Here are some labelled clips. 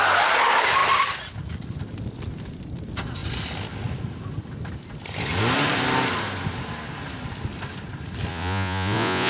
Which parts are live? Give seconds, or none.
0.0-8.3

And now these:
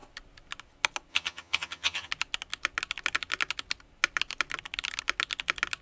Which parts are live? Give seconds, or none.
0.0-1.1; 2.1-5.8

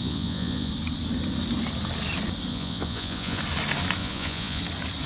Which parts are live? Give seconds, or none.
0.7-2.5; 3.4-4.0; 4.6-5.1

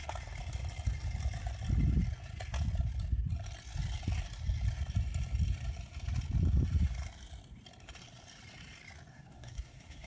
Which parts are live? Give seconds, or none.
0.0-9.1